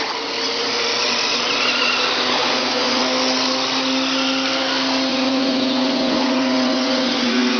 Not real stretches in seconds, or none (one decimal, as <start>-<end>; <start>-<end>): 2.4-3.0; 5.1-7.6